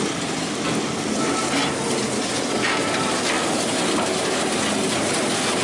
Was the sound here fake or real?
real